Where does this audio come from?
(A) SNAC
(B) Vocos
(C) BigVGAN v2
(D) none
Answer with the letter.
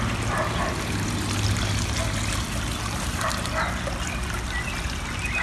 D